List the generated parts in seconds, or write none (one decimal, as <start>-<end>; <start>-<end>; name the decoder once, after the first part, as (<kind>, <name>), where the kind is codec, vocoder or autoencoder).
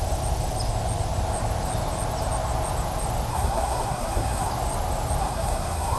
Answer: 3.3-4.5 (codec, SNAC); 5.2-6.0